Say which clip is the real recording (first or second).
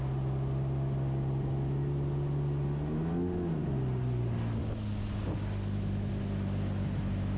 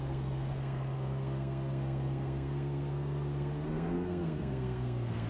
first